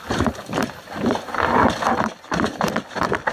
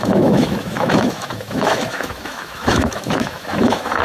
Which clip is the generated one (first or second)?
second